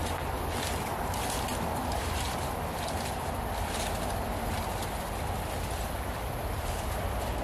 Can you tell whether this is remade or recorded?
recorded